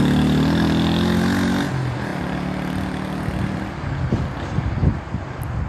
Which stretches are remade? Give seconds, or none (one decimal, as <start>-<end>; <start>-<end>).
none